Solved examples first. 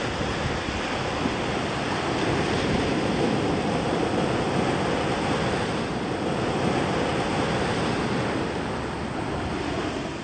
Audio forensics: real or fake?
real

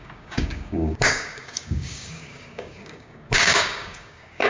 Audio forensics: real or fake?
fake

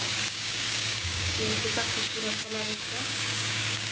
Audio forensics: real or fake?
fake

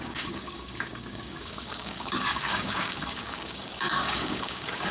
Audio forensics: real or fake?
fake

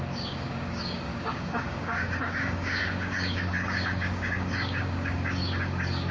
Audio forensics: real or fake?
fake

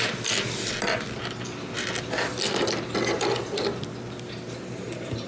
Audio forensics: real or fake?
real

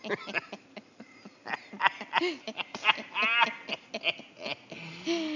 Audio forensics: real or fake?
real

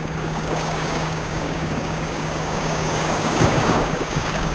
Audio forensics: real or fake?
fake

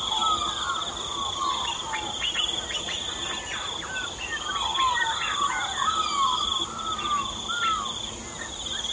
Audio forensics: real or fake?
real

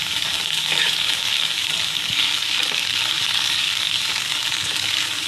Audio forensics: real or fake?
fake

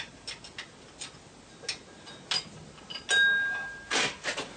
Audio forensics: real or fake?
real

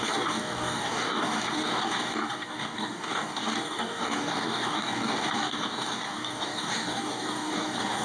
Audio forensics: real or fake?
fake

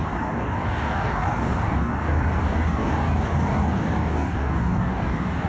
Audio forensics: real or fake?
fake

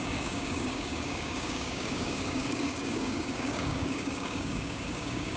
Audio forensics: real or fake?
fake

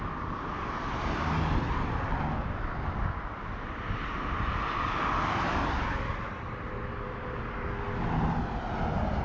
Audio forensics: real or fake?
real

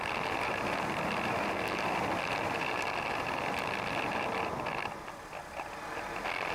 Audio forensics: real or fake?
real